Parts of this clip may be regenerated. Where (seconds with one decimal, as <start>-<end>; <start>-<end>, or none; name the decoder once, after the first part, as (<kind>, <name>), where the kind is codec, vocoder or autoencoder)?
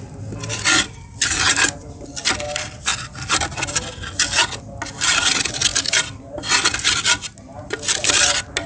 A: none